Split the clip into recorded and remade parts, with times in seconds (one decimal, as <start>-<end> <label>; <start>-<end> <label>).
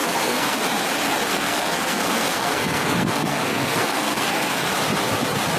0.0-0.6 remade; 0.6-1.3 recorded; 1.3-4.7 remade; 4.7-5.6 recorded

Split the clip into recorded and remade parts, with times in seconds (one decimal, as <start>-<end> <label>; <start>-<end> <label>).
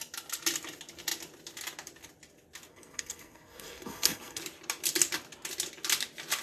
0.0-2.7 recorded; 2.7-4.4 remade; 4.4-6.4 recorded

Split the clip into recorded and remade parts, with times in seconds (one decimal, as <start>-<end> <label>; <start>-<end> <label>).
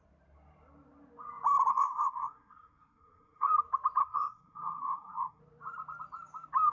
0.0-1.7 recorded; 1.7-3.5 remade; 3.5-4.0 recorded; 4.0-5.4 remade; 5.4-6.7 recorded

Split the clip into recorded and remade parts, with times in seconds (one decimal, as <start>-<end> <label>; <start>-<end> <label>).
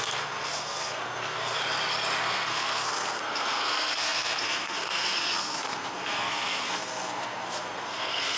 0.0-1.6 remade; 1.6-2.2 recorded; 2.2-8.4 remade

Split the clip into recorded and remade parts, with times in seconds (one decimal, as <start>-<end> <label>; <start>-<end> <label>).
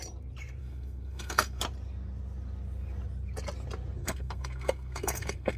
0.0-0.6 recorded; 0.6-1.6 remade; 1.6-4.0 recorded; 4.0-5.6 remade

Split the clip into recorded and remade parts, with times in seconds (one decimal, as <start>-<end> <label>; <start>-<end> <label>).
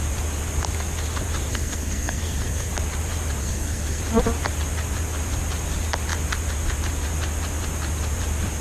0.0-1.5 recorded; 1.5-2.7 remade; 2.7-3.4 recorded; 3.4-4.0 remade; 4.0-8.6 recorded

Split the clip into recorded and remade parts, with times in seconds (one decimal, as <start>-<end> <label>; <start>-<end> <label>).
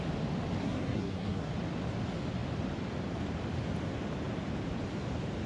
0.0-0.6 recorded; 0.6-1.5 remade; 1.5-5.5 recorded